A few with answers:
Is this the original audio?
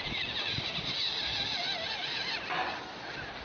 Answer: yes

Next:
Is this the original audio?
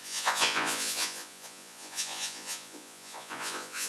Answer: no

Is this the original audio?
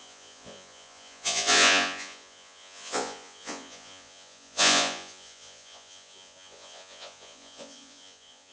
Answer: no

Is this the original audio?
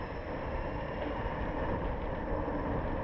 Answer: yes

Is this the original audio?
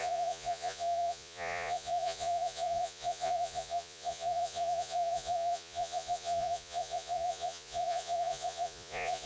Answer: no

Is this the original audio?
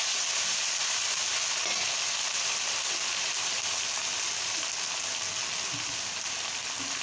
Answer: yes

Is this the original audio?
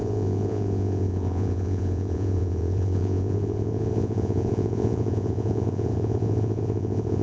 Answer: no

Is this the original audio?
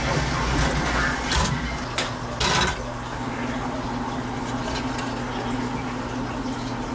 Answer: yes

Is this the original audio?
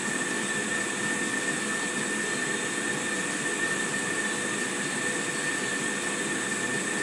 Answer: yes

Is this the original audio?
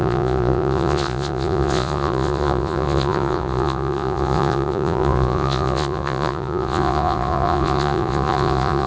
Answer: no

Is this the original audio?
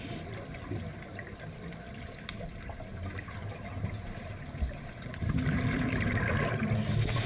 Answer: yes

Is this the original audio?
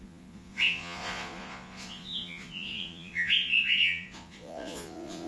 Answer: no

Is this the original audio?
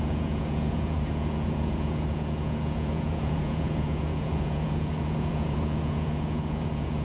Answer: no